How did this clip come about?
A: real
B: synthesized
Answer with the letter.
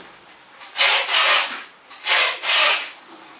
A